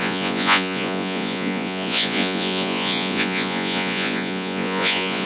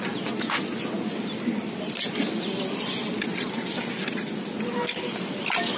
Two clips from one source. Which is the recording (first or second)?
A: second